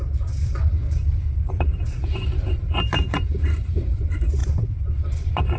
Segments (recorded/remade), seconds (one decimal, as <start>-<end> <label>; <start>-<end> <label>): 0.0-0.8 remade; 0.8-1.5 recorded; 1.5-5.6 remade